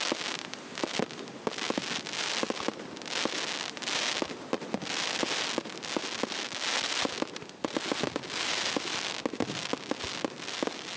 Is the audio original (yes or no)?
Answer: yes